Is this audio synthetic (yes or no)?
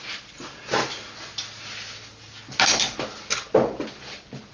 no